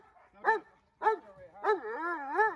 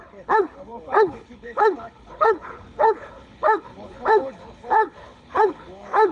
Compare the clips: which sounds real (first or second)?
first